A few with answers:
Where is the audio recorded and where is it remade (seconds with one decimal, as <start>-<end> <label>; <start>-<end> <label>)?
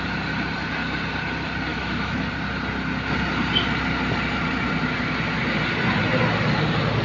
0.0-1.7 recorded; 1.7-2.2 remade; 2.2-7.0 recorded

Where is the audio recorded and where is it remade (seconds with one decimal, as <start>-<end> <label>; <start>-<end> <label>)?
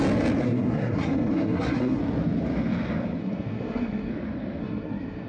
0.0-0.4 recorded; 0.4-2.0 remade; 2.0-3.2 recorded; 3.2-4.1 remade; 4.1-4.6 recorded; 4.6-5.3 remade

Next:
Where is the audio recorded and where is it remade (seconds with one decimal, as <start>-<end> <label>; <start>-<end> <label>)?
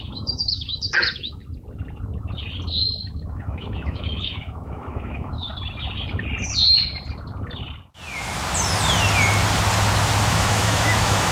0.0-1.4 remade; 1.4-3.0 recorded; 3.0-5.5 remade; 5.5-10.3 recorded; 10.3-11.3 remade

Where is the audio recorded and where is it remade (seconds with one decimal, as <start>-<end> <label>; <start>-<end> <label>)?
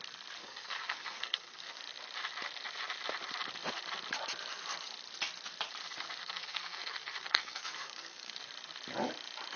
0.0-0.4 recorded; 0.4-1.8 remade; 1.8-6.2 recorded; 6.2-8.4 remade; 8.4-9.6 recorded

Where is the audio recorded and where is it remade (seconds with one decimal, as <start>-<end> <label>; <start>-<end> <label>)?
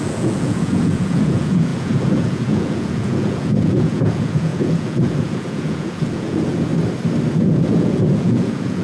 0.0-6.7 remade; 6.7-7.3 recorded; 7.3-8.8 remade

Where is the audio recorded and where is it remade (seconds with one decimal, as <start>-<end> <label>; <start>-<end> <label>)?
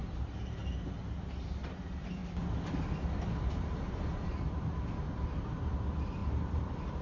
0.0-2.2 remade; 2.2-3.4 recorded; 3.4-7.0 remade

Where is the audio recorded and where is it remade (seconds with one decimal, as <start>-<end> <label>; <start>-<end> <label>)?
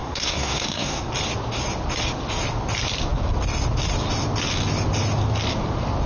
0.0-1.1 remade; 1.1-6.1 recorded